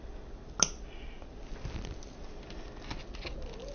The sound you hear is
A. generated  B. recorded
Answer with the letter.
B